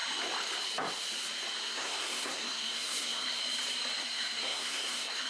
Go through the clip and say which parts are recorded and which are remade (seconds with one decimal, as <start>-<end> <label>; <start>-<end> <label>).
0.0-1.6 recorded; 1.6-3.4 remade; 3.4-4.0 recorded; 4.0-5.3 remade